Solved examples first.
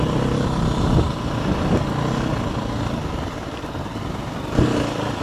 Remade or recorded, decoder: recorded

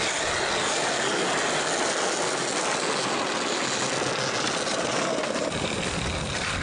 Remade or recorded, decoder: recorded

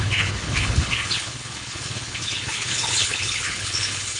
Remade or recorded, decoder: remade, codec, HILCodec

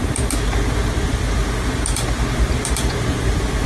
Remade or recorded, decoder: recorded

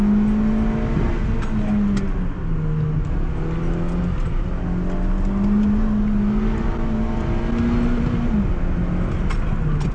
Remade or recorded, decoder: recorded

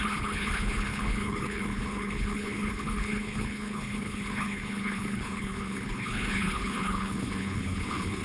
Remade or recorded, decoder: remade, codec, HILCodec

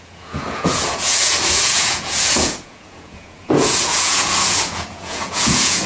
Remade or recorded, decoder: remade, vocoder, Vocos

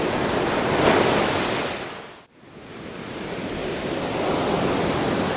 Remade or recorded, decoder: recorded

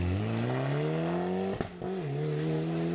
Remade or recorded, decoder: recorded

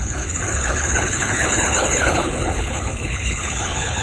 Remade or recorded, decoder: remade, codec, HILCodec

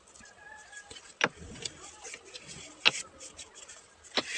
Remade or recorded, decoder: recorded